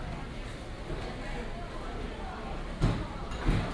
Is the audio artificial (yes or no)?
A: no